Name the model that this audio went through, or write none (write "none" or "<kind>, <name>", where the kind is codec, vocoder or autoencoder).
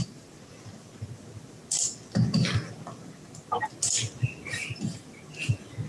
none